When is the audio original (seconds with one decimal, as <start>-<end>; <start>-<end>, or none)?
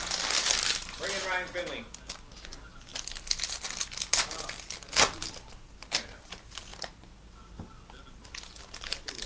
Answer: 0.0-9.3